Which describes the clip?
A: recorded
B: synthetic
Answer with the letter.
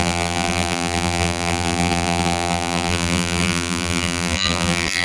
B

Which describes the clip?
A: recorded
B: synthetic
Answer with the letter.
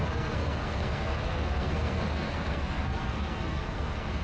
B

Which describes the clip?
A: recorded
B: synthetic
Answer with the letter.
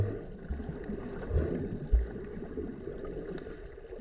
A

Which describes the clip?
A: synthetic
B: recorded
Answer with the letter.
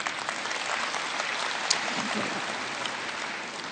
B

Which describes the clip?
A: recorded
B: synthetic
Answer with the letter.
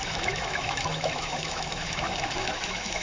B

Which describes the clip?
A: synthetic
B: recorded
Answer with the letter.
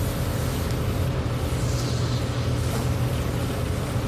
B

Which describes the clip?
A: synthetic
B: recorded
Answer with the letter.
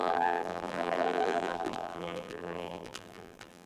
A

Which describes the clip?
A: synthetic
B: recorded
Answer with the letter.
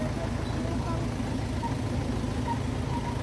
B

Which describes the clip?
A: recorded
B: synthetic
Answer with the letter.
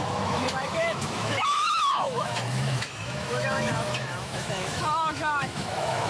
B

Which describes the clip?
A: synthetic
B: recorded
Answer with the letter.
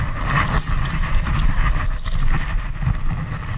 B